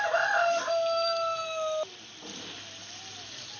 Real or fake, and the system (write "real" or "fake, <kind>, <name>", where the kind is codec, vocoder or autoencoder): real